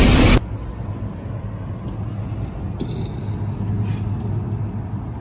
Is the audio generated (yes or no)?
no